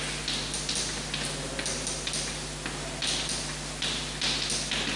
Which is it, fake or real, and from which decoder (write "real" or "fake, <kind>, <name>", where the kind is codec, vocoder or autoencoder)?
real